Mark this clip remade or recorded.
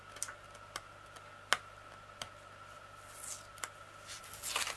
recorded